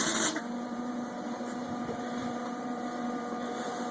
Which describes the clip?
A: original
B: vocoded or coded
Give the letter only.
B